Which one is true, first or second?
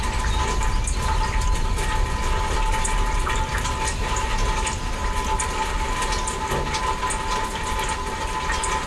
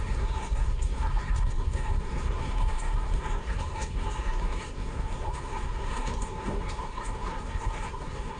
first